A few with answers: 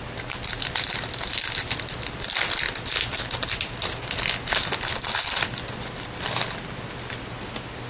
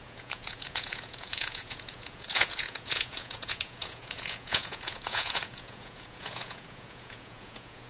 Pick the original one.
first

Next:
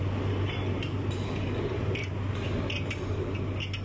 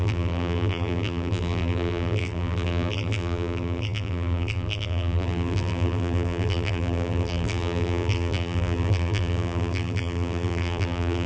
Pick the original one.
first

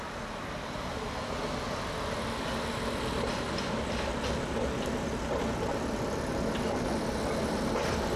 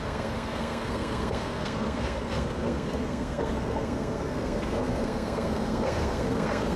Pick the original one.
first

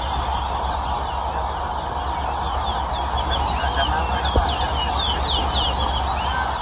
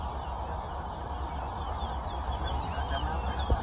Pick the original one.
first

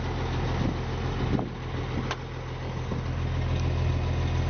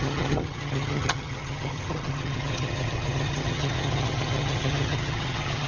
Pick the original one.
first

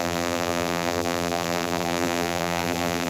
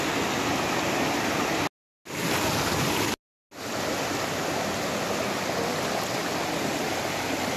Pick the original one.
second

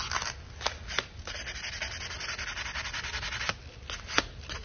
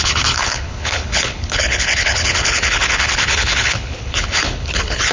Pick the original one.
first